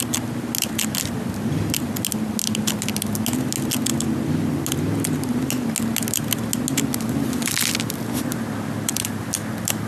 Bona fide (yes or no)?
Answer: yes